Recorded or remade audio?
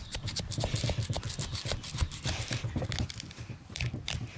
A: recorded